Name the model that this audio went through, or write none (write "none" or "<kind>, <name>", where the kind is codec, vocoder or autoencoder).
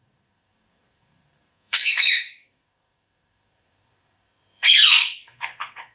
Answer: codec, SNAC